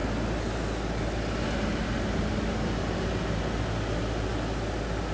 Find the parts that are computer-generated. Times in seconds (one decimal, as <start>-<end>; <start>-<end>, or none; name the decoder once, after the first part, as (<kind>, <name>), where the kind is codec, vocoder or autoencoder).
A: none